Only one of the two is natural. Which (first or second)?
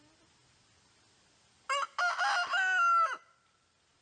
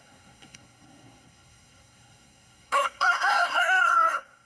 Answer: first